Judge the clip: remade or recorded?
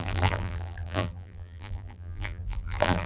remade